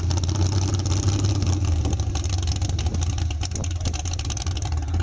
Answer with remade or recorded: recorded